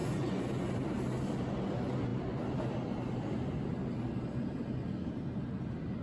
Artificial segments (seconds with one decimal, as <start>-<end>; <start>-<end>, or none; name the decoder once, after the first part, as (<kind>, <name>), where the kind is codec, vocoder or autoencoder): 0.0-0.7 (vocoder, Vocos)